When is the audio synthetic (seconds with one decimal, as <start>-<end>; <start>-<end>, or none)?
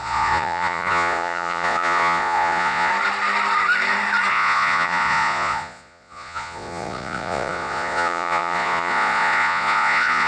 0.0-2.9; 4.3-10.3